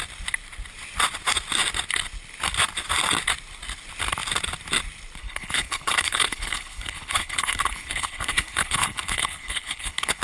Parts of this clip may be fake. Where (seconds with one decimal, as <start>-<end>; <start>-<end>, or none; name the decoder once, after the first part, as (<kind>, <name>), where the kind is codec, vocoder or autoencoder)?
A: 5.2-10.2 (codec, HILCodec)